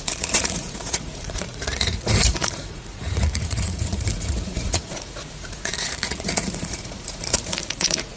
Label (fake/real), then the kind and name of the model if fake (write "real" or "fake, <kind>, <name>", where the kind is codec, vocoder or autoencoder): fake, vocoder, Vocos